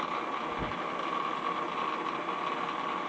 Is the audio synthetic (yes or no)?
no